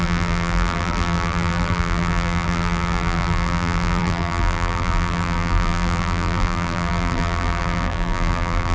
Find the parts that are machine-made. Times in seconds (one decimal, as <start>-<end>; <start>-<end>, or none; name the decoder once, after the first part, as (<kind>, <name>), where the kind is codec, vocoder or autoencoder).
0.0-8.7 (vocoder, BigVGAN v2)